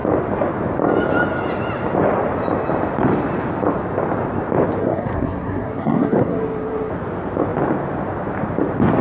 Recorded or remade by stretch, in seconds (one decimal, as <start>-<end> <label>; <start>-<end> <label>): 0.0-4.8 recorded; 4.8-6.9 remade; 6.9-9.0 recorded